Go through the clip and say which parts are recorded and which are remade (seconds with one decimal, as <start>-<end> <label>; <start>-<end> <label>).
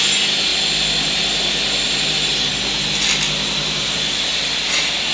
0.0-5.1 recorded